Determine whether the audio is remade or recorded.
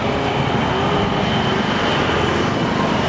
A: recorded